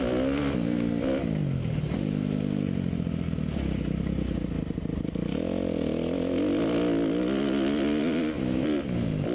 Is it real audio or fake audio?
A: real